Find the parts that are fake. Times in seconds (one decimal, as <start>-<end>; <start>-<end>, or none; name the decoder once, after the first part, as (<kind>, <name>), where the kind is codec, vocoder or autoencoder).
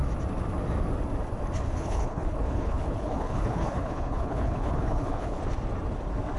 1.6-5.4 (codec, HILCodec)